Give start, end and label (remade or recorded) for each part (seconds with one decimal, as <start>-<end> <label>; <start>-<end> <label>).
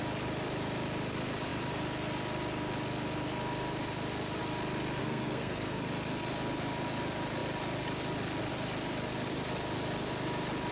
0.0-5.0 recorded; 5.0-5.9 remade; 5.9-10.7 recorded